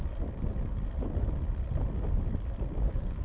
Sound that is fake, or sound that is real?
real